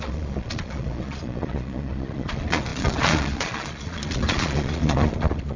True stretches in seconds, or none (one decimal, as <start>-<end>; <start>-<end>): none